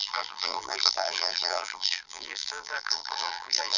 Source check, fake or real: fake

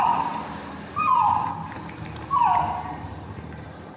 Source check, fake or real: fake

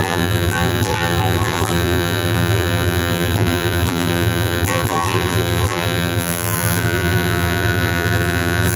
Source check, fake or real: fake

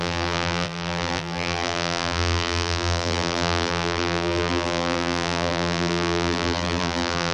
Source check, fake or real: fake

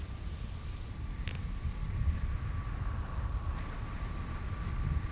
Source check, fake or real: real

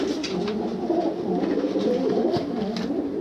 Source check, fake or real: real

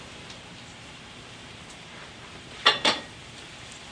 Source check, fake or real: fake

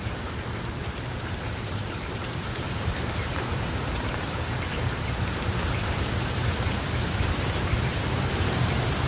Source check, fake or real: fake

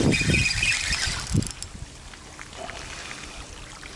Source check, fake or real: real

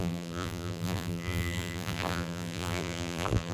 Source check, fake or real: fake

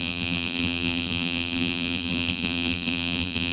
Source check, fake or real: fake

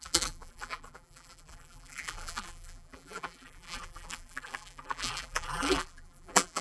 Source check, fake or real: fake